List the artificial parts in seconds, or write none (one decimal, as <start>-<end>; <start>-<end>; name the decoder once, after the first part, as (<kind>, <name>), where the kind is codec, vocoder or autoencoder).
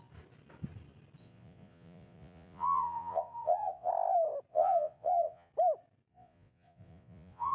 1.2-3.9 (vocoder, Vocos); 4.5-5.5; 6.1-7.5